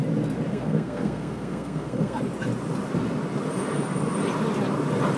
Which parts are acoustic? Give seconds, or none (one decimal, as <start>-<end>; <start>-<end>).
0.0-0.5; 2.2-5.2